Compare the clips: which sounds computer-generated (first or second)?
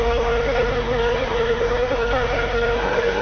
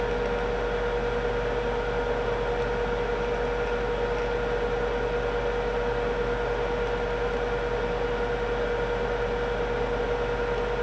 first